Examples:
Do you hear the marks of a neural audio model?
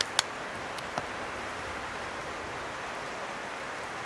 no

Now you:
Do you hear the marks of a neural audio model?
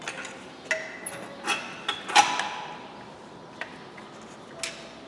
no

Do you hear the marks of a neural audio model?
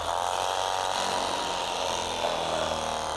no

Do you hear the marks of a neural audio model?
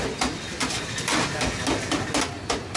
no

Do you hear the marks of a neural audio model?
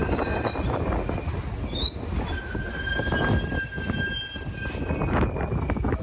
no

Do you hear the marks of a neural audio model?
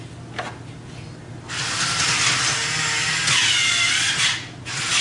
no